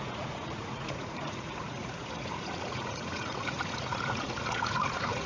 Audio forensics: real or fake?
fake